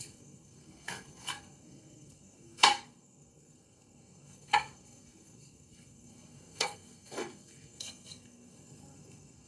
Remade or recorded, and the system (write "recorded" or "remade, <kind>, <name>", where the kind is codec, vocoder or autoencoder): remade, codec, SNAC